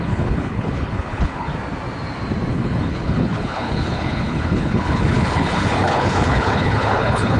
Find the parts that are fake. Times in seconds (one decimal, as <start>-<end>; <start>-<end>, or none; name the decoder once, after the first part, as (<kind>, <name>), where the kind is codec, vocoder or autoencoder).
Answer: 0.0-1.5 (codec, HILCodec); 2.5-7.4